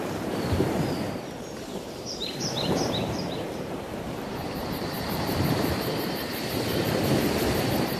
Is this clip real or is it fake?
fake